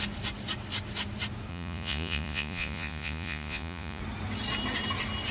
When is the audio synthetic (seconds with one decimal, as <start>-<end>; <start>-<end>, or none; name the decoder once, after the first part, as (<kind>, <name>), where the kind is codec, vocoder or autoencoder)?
1.5-4.0 (vocoder, Vocos)